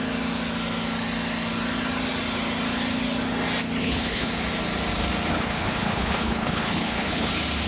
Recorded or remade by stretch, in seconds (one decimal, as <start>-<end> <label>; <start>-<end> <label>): 0.0-3.8 recorded; 3.8-4.3 remade; 4.3-5.3 recorded; 5.3-7.3 remade; 7.3-7.7 recorded